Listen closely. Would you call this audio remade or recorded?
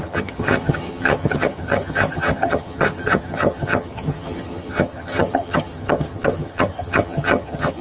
remade